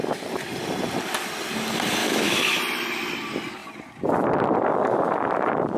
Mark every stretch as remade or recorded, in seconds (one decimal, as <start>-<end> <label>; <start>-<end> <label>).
0.0-2.0 recorded; 2.0-2.6 remade; 2.6-5.8 recorded